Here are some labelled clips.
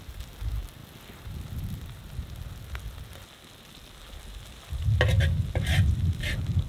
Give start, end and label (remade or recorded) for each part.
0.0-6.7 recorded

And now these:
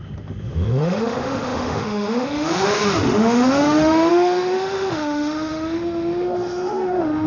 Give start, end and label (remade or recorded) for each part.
0.0-7.3 remade